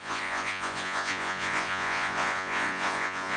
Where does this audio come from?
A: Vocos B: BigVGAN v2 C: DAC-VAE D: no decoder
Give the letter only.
A